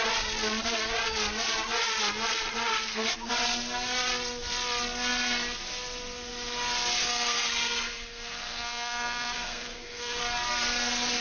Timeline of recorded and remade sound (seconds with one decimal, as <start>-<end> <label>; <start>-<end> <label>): 0.0-2.7 recorded; 2.7-3.3 remade; 3.3-7.0 recorded; 7.0-10.2 remade; 10.2-11.2 recorded